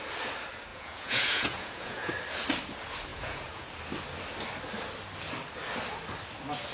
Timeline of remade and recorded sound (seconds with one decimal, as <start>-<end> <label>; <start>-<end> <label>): 0.0-0.7 recorded; 0.7-2.1 remade; 2.1-3.1 recorded; 3.1-3.7 remade; 3.7-6.7 recorded